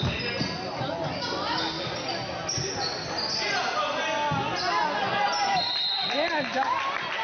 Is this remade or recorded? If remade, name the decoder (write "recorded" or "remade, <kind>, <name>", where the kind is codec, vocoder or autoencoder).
recorded